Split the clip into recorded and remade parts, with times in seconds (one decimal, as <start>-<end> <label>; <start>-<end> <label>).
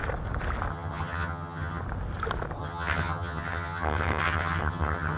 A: 0.0-0.7 recorded; 0.7-1.8 remade; 1.8-2.6 recorded; 2.6-5.2 remade